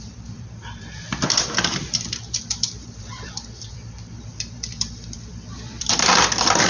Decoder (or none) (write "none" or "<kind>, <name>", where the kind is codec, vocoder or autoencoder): vocoder, BigVGAN v2